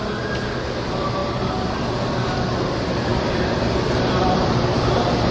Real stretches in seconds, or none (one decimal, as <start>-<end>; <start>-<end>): 0.0-3.1; 4.8-5.3

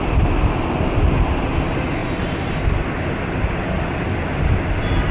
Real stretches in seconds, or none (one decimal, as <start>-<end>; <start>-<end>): 0.0-2.0; 2.7-5.1

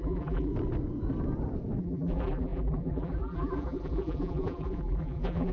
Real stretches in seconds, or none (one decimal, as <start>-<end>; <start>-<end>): 0.5-1.8

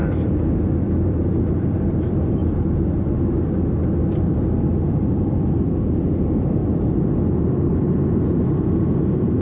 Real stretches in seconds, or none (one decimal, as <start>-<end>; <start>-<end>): 0.0-0.6; 6.6-7.4

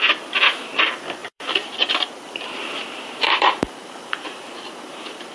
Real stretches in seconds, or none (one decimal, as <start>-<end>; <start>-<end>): 0.0-1.2; 1.9-2.6

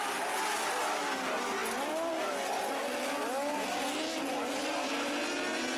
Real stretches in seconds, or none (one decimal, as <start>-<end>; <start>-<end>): 0.0-5.8

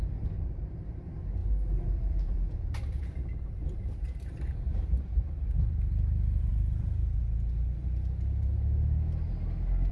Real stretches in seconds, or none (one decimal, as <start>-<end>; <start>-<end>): 8.5-9.9